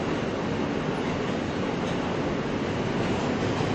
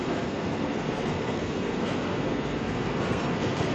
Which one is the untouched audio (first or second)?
first